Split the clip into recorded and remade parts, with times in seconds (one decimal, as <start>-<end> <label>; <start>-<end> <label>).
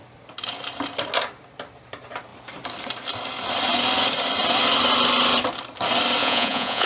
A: 0.0-6.2 recorded; 6.2-6.9 remade